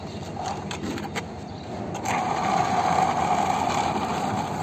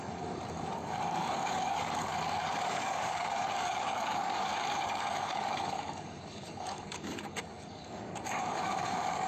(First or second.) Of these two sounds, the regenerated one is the second